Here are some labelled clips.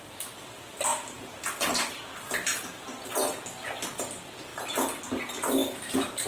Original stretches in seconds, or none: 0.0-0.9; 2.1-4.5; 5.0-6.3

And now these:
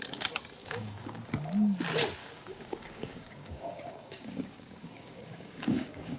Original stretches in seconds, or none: 0.0-0.6; 1.2-2.2

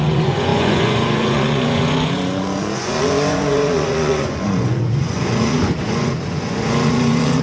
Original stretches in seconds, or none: none

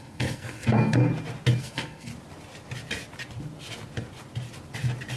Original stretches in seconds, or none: 1.1-1.6; 2.1-5.2

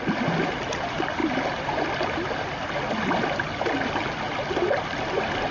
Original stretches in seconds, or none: 0.0-5.5

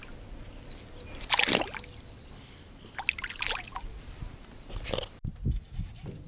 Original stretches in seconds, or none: 0.0-6.3